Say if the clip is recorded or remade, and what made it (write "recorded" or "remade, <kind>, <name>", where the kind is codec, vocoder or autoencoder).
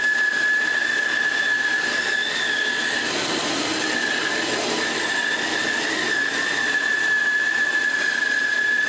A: recorded